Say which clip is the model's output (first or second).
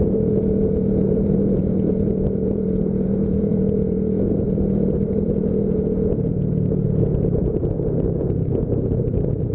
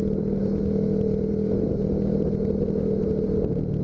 first